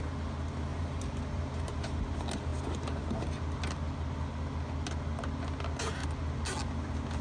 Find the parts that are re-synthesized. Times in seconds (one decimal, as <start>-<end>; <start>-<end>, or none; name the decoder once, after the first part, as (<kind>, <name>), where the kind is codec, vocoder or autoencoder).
0.7-2.0 (vocoder, BigVGAN v2)